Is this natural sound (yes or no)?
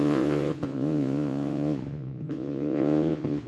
no